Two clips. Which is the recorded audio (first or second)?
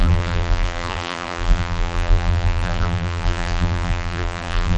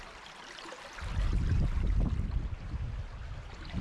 second